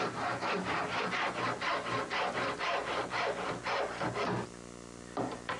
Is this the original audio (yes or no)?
yes